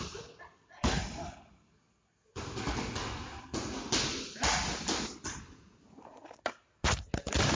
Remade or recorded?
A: recorded